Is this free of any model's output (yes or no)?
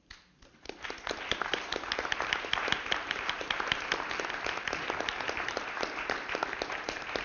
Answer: no